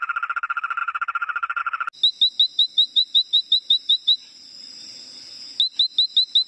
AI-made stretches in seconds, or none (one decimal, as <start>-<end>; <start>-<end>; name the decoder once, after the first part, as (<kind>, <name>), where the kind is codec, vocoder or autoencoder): 0.8-1.6 (vocoder, BigVGAN v2); 2.5-5.3